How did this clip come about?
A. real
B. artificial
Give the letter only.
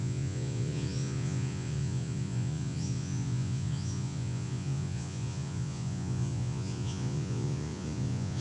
B